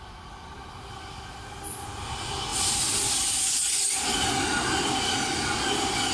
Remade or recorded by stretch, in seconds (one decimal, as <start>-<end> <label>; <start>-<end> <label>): 0.0-6.1 recorded